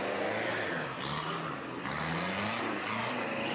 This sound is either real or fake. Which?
real